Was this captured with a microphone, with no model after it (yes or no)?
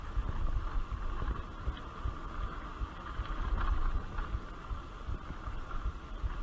yes